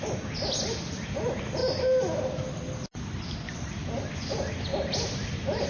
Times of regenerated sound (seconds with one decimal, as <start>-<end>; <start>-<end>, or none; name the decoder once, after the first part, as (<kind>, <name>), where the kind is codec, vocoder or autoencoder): none